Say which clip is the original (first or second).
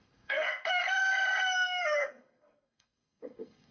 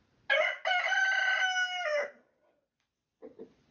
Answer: second